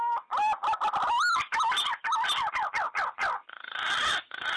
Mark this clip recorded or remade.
remade